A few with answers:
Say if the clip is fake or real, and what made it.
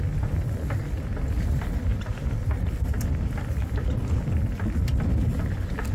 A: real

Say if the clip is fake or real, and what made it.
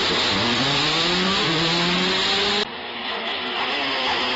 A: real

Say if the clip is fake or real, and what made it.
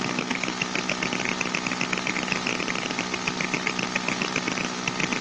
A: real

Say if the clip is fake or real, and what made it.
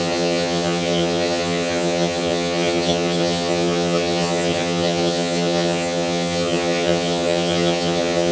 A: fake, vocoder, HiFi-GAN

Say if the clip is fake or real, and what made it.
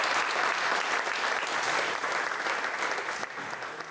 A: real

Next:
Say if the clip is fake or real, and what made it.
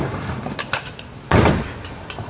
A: real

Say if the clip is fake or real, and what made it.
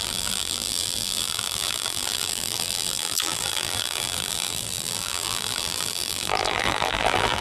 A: fake, vocoder, BigVGAN v2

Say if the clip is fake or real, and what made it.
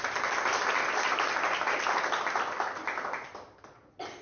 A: real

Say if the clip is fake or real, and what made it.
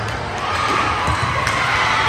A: real